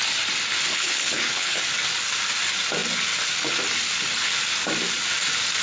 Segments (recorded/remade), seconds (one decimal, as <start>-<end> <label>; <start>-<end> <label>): 0.0-0.7 recorded; 0.7-1.6 remade; 1.6-5.6 recorded